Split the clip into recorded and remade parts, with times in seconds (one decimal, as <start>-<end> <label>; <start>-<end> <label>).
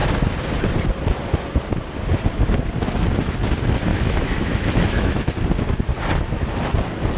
0.0-3.9 recorded; 3.9-5.3 remade; 5.3-7.2 recorded